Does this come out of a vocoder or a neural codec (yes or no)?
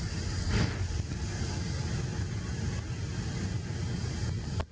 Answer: no